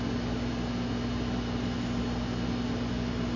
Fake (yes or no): no